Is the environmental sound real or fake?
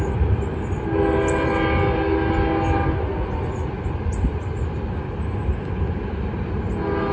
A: real